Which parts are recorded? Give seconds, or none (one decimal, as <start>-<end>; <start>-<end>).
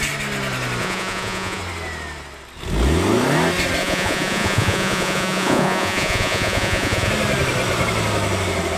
0.0-0.8; 1.6-3.8; 7.1-8.8